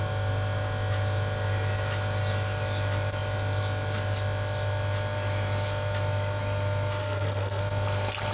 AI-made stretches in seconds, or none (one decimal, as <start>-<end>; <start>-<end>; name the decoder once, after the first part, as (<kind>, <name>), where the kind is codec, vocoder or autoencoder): 7.0-7.6 (codec, SNAC)